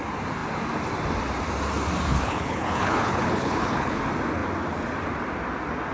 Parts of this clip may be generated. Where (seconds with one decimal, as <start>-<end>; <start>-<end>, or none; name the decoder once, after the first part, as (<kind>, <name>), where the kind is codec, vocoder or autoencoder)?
2.1-4.0 (codec, HILCodec)